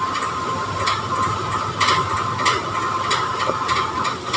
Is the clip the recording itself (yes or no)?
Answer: yes